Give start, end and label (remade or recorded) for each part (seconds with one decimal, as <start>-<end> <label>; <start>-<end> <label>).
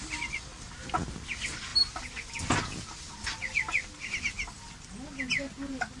0.0-6.0 recorded